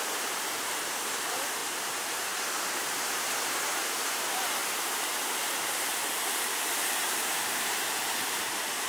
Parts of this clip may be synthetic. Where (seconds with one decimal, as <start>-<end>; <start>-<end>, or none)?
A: 0.0-8.9